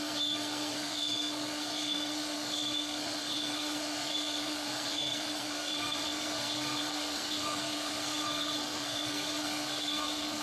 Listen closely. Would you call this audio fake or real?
fake